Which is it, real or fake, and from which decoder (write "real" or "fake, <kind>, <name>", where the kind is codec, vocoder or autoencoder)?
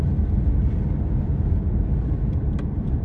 real